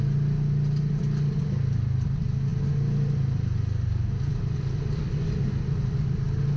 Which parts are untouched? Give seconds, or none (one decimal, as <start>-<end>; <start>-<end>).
0.0-6.6